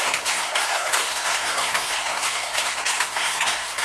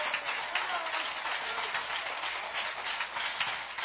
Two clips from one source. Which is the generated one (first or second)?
first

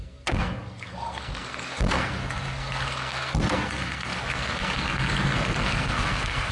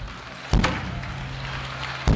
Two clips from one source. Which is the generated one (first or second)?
first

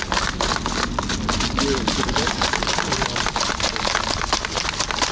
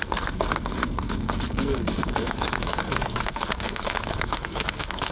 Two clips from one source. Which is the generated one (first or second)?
second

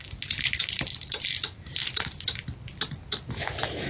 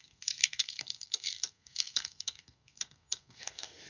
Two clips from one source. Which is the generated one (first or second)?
second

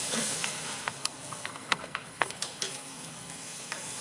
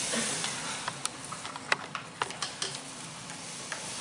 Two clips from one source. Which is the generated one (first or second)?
first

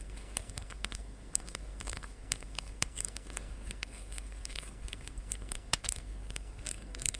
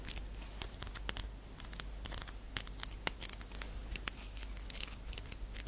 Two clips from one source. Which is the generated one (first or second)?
first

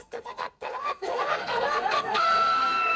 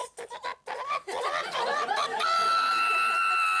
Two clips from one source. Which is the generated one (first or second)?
first